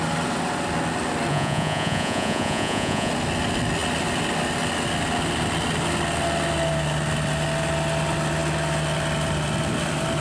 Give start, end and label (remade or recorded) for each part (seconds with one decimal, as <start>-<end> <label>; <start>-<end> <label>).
0.0-1.3 recorded; 1.3-3.1 remade; 3.1-10.2 recorded